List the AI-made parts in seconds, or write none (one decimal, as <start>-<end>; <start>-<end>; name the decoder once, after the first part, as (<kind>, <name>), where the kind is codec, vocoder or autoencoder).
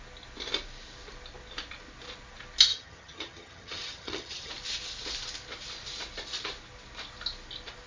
2.7-4.5 (vocoder, HiFi-GAN)